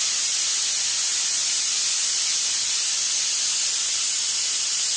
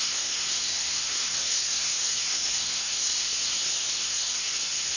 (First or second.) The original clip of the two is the first